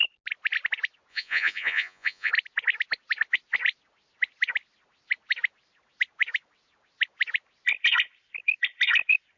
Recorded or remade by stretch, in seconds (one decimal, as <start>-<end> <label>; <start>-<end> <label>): 0.0-1.1 recorded; 1.1-2.3 remade; 2.3-9.4 recorded